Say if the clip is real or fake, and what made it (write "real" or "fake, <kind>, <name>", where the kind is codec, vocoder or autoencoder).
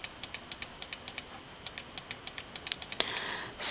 real